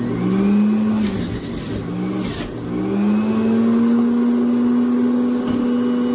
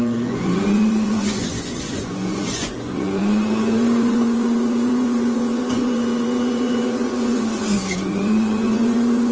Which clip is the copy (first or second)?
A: second